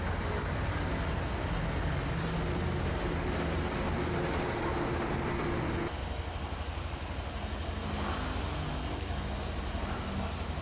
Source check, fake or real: real